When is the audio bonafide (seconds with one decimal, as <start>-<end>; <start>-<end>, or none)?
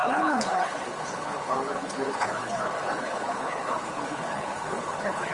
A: none